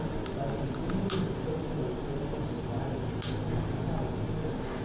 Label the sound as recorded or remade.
recorded